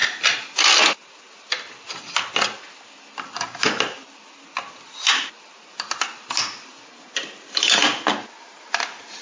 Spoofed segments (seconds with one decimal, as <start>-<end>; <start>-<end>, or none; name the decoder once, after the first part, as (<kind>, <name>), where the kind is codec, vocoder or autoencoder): none